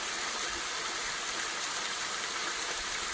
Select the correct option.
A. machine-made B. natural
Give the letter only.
B